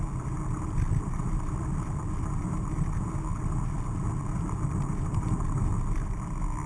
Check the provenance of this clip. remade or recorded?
recorded